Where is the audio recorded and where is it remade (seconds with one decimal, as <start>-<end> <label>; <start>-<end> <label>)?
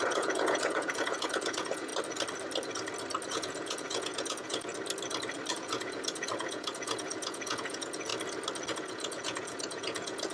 0.0-1.9 remade; 1.9-3.3 recorded; 3.3-4.7 remade; 4.7-5.5 recorded; 5.5-8.1 remade; 8.1-8.7 recorded; 8.7-10.3 remade